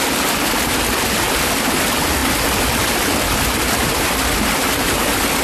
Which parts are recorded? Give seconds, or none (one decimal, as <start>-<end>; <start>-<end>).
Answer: 0.0-5.4